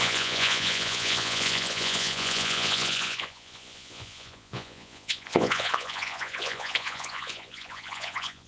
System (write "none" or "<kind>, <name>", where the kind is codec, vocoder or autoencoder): vocoder, Vocos